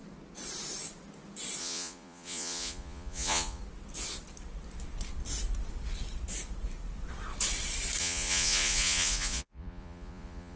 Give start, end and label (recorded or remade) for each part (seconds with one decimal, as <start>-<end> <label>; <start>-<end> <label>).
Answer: 0.0-1.6 recorded; 1.6-3.6 remade; 3.6-8.0 recorded; 8.0-10.6 remade